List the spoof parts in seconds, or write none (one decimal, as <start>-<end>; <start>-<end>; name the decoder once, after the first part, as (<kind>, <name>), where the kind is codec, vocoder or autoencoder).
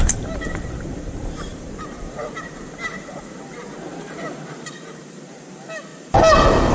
0.0-6.7 (vocoder, BigVGAN v2)